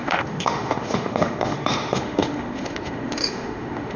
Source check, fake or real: fake